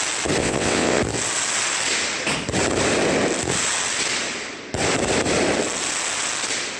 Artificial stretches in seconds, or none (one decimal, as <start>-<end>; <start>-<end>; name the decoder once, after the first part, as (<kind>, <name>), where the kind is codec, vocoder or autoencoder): 0.4-1.0 (vocoder, WaveNeXt)